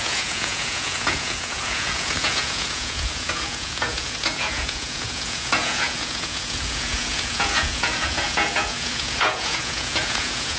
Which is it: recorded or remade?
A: remade